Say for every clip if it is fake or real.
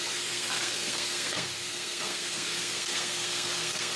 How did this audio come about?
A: fake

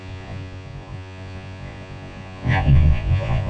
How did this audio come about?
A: fake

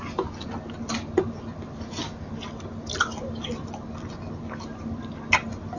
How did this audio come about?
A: real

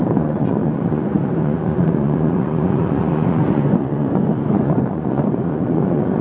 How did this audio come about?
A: fake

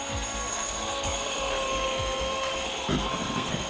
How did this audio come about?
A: fake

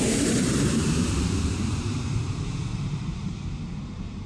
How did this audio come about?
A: fake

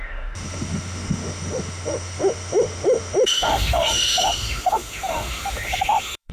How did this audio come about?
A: fake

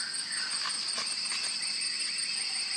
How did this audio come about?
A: real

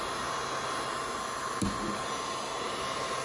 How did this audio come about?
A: real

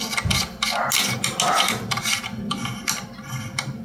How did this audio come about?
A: real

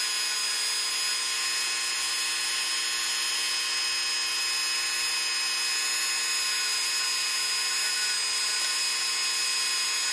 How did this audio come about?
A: real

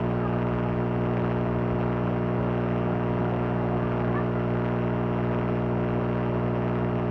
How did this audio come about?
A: real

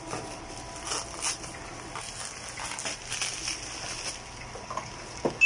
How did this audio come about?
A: real